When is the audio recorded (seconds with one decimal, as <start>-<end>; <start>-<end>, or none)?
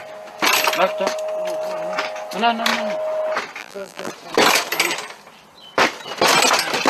0.0-3.6; 4.1-6.9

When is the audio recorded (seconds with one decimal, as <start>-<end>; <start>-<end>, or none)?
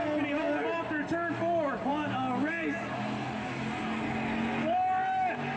0.0-5.6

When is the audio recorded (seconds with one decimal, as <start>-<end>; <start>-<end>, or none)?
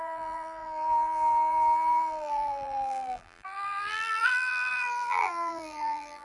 none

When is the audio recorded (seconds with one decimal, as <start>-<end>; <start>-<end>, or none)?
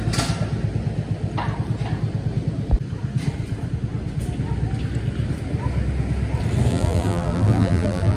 0.0-6.7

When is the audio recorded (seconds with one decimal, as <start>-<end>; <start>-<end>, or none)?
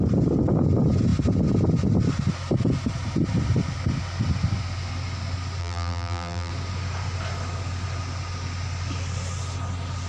0.0-5.6; 6.5-10.1